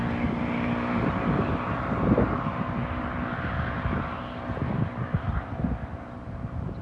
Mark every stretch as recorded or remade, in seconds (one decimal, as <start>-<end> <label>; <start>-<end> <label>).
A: 0.0-6.8 recorded